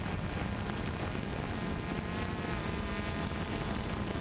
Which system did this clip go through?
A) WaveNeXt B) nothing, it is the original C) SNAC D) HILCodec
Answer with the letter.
B